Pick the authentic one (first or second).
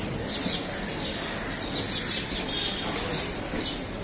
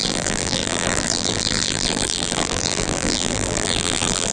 first